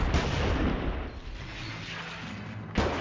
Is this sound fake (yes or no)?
no